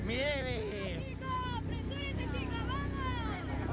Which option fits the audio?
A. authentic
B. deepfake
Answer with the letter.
A